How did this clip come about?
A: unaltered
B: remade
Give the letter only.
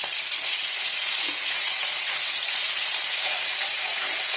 B